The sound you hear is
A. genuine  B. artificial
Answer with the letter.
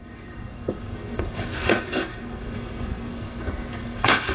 B